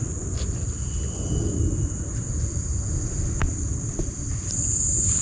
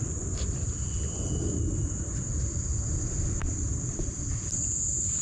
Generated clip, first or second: second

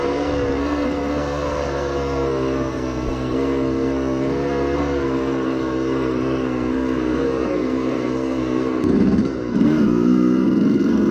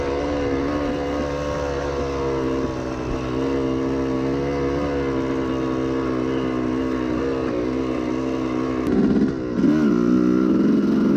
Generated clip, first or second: first